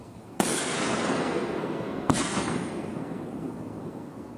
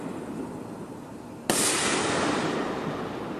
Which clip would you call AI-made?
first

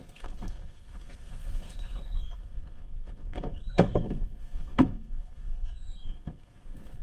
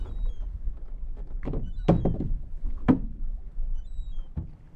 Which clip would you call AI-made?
first